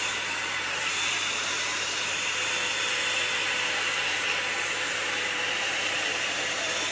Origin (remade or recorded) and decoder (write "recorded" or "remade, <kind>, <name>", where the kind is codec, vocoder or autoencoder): remade, vocoder, BigVGAN v2